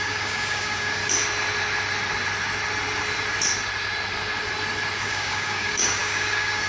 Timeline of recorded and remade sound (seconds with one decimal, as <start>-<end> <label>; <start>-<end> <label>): 0.0-1.0 remade; 1.0-5.0 recorded; 5.0-6.7 remade